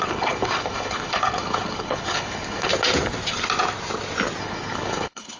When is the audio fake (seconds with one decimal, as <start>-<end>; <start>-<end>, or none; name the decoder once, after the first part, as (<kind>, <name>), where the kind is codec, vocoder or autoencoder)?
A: 0.0-2.7 (codec, HILCodec); 4.4-5.4